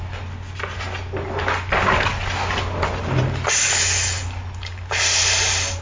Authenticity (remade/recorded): recorded